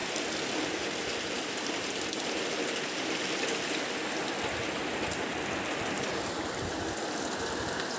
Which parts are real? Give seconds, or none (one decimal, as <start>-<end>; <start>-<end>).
0.0-8.0